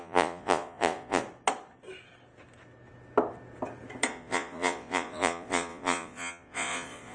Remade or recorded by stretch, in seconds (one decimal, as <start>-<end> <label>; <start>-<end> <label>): 0.0-1.2 remade; 1.2-4.1 recorded; 4.1-7.1 remade